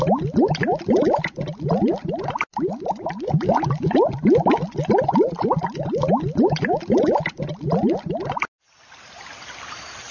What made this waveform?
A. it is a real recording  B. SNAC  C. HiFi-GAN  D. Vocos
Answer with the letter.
A